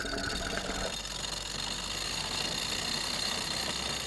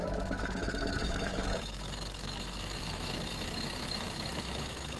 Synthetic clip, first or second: second